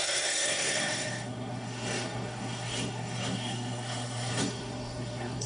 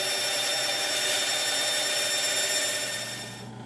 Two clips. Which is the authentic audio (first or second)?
second